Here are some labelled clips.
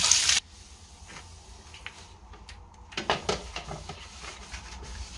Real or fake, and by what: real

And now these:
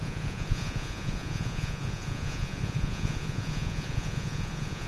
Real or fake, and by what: fake, vocoder, Vocos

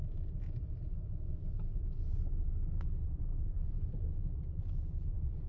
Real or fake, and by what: fake, vocoder, BigVGAN v2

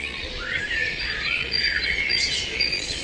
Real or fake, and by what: fake, vocoder, Vocos